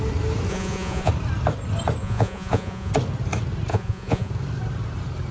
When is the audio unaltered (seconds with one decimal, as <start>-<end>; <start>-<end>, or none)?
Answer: 0.0-0.5; 1.1-2.0; 2.9-3.7; 4.3-5.3